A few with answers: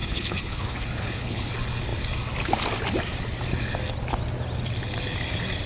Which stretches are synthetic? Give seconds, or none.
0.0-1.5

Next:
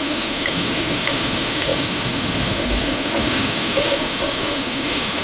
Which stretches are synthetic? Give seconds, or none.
0.0-5.2

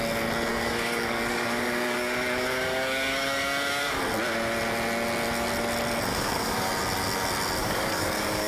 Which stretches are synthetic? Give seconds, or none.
0.5-4.0; 6.1-6.7; 7.6-8.5

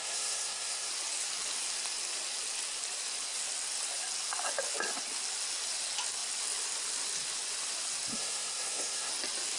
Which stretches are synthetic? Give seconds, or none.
0.0-0.9; 8.1-9.1

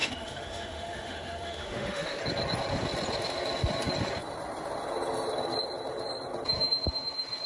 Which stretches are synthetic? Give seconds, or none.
0.0-2.2